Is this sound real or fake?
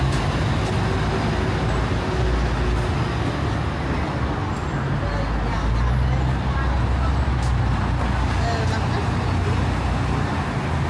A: real